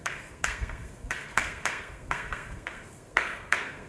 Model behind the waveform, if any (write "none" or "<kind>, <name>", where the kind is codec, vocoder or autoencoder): codec, SNAC